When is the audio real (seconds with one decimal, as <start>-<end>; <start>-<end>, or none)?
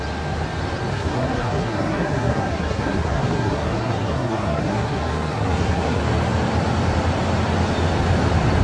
0.0-0.9; 6.0-8.6